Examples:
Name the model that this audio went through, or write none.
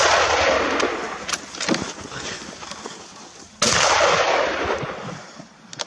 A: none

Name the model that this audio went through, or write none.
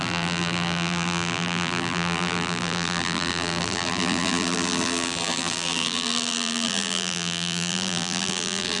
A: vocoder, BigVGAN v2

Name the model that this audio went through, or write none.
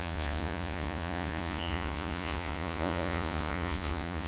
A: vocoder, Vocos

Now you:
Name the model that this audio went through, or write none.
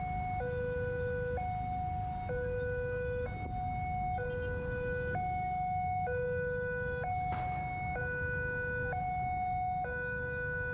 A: none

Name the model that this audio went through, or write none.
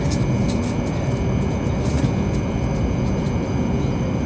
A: none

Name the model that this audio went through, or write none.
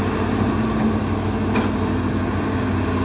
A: none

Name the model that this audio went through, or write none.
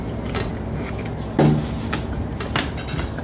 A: none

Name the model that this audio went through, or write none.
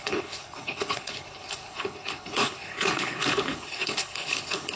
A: codec, HILCodec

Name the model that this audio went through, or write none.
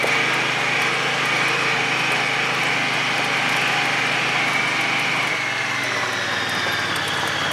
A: none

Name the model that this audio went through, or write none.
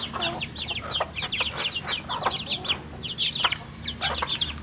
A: none